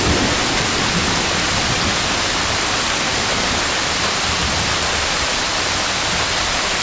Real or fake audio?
real